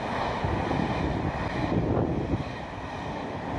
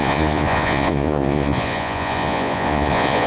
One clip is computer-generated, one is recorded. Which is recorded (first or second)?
first